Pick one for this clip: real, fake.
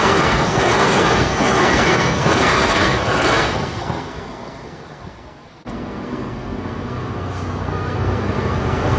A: fake